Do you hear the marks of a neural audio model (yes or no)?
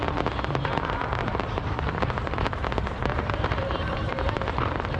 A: yes